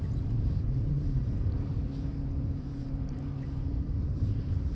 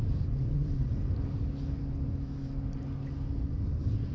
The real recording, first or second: second